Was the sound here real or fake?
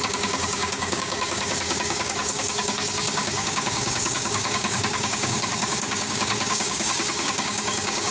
fake